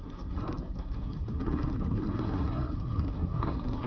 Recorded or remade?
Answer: remade